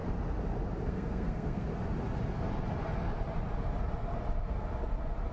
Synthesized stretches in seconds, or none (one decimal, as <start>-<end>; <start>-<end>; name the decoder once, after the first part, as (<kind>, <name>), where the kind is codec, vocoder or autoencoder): 0.8-1.7 (codec, SNAC)